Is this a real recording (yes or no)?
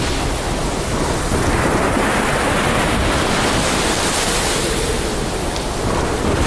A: yes